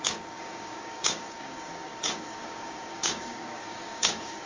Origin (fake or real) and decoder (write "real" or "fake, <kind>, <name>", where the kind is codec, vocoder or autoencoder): fake, codec, DAC